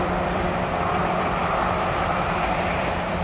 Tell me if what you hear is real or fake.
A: fake